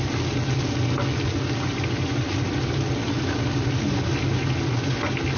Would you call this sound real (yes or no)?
yes